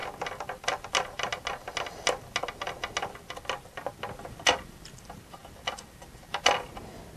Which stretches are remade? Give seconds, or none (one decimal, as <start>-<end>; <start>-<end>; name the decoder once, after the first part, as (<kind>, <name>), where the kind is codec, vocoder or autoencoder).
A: none